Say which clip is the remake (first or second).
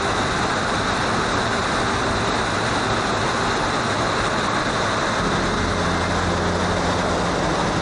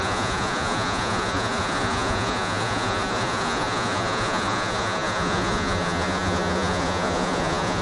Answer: second